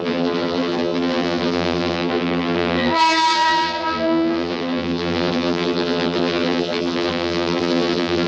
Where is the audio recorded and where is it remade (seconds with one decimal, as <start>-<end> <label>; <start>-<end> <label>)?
0.0-8.3 remade